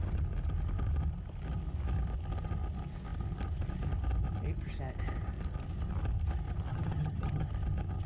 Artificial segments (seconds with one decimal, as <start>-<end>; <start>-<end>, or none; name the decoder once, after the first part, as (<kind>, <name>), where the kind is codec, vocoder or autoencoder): 6.7-7.5 (vocoder, HiFi-GAN)